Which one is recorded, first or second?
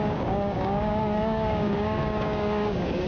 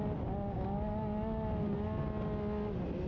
second